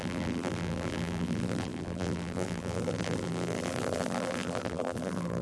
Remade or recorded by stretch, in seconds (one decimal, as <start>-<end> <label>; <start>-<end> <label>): 0.0-5.4 remade